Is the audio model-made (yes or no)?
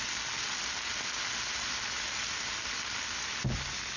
no